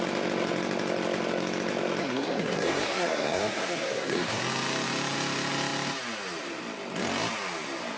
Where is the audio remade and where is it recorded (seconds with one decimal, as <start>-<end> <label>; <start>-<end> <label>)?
0.0-2.0 recorded; 2.0-4.4 remade; 4.4-8.0 recorded